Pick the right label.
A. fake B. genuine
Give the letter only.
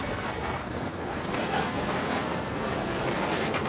A